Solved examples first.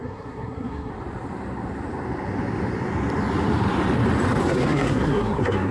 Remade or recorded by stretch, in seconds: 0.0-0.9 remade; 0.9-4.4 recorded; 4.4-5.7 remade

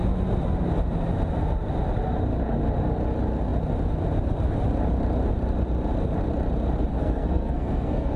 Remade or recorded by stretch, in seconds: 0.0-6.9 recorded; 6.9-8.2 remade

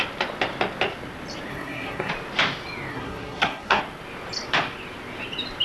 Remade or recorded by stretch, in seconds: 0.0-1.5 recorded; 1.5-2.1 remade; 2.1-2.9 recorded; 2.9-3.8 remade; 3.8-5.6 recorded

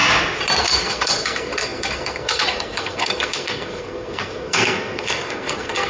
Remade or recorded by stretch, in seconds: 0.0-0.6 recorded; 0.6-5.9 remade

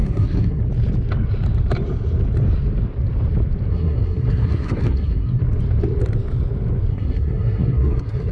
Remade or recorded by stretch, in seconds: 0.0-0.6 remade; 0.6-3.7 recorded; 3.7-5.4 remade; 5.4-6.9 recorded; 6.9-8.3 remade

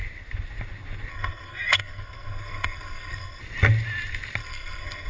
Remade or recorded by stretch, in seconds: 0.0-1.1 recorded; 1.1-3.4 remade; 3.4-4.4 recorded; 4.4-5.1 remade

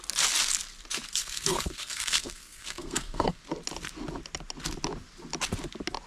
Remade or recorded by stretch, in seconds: 0.0-1.2 recorded; 1.2-3.4 remade; 3.4-6.1 recorded

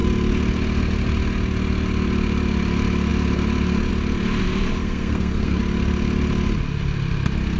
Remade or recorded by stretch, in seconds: 0.0-4.8 recorded; 4.8-5.6 remade; 5.6-7.6 recorded